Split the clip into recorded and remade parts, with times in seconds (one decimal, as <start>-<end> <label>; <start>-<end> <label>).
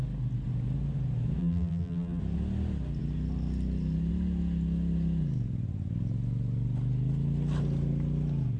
0.0-1.4 recorded; 1.4-2.2 remade; 2.2-8.6 recorded